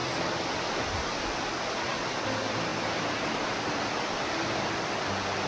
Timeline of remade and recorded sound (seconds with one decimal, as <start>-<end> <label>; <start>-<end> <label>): 0.0-2.7 recorded; 2.7-3.9 remade; 3.9-5.5 recorded